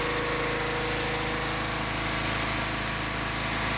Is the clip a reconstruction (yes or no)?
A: no